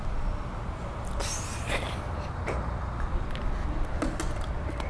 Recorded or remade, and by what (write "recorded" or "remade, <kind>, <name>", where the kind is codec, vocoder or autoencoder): recorded